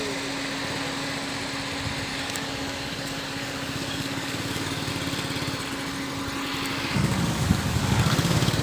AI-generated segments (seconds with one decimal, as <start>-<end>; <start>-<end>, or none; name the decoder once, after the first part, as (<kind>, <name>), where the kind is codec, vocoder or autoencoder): 2.1-4.9 (codec, DAC); 6.7-8.6